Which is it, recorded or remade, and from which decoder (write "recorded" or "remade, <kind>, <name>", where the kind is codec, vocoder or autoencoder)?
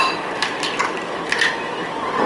recorded